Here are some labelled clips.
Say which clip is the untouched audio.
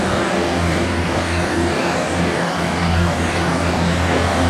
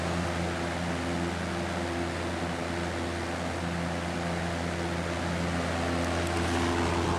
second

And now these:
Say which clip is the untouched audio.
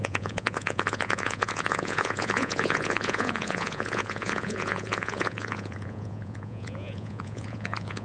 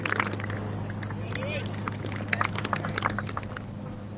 second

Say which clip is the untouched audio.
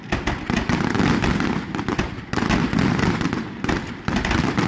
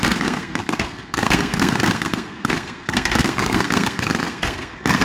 first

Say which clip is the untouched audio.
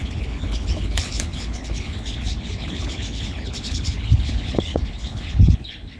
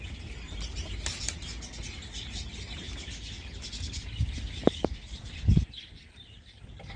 second